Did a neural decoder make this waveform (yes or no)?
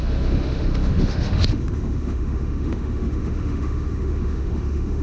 yes